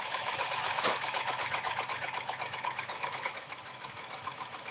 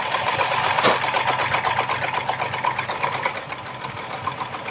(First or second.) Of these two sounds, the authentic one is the second